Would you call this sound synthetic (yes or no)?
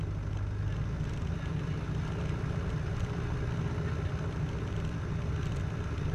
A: no